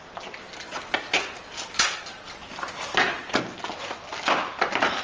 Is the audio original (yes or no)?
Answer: yes